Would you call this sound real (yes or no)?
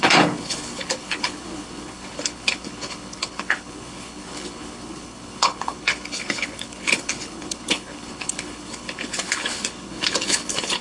no